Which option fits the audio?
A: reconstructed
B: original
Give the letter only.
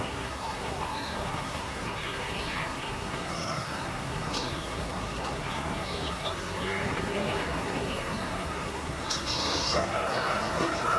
A